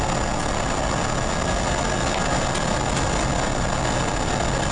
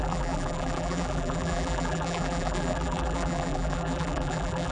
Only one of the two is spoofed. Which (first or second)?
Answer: second